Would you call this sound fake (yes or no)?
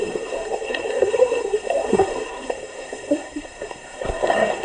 yes